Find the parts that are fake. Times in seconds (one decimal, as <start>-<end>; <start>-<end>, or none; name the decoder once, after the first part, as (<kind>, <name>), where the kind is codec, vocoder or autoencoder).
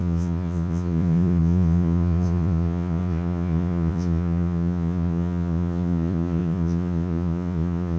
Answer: 0.0-8.0 (vocoder, Vocos)